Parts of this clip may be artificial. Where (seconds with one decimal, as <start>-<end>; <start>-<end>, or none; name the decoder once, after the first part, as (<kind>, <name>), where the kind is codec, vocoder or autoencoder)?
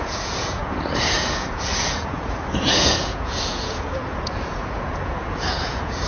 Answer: 0.0-6.1 (vocoder, Vocos)